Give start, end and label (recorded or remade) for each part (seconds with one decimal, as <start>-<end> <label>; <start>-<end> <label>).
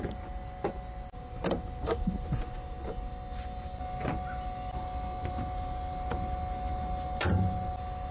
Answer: 0.0-8.1 recorded